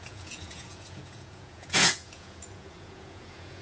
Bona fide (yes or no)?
no